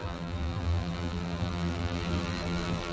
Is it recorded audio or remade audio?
remade